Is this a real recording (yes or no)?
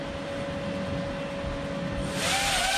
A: yes